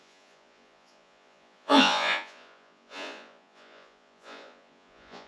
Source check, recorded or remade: remade